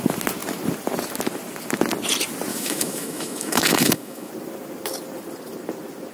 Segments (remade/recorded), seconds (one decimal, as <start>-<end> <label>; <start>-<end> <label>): 0.0-2.5 recorded; 2.5-4.3 remade; 4.3-6.1 recorded